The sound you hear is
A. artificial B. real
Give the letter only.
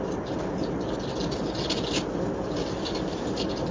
B